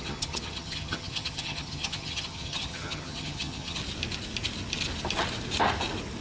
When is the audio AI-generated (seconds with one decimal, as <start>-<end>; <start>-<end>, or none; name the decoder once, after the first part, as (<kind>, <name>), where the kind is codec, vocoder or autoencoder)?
0.0-3.8 (vocoder, HiFi-GAN)